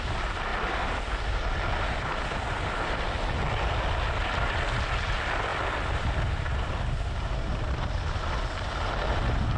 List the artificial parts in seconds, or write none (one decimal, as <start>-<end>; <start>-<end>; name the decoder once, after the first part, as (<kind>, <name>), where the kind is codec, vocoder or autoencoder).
none